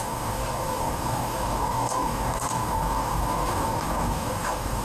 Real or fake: fake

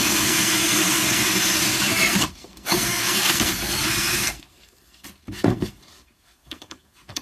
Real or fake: fake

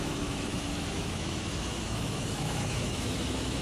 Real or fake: fake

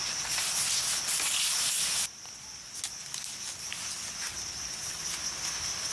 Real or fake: real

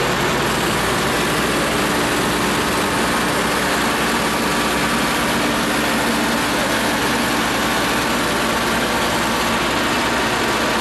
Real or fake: real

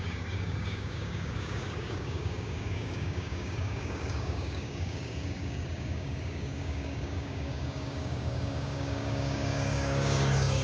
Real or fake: fake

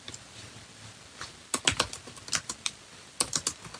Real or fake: real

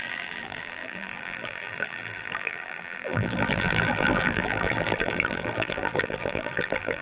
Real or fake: fake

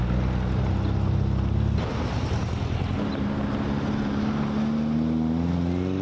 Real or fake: real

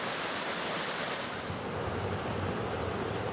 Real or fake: real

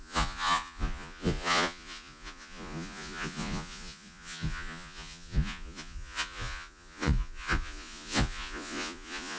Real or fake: fake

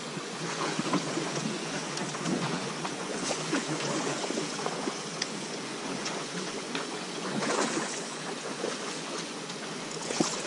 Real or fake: fake